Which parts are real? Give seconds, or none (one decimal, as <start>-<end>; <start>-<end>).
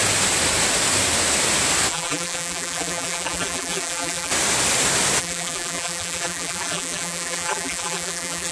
0.0-1.9; 4.3-5.2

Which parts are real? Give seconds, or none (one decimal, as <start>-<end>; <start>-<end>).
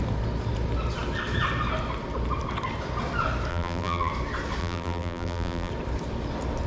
0.0-3.5; 4.1-4.6; 5.7-6.7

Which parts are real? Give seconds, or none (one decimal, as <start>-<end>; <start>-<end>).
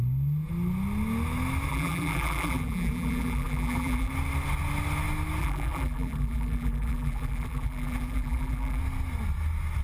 0.0-1.7; 4.1-5.4; 8.8-9.8